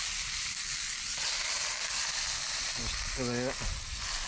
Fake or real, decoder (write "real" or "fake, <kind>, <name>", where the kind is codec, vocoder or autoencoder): real